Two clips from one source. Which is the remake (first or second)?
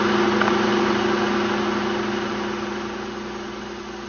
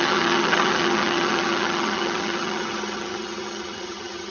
second